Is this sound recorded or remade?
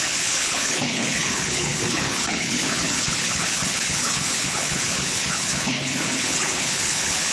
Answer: remade